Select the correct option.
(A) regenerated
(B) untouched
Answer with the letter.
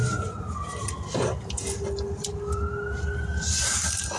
B